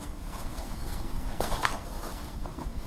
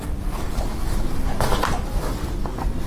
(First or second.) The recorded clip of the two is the second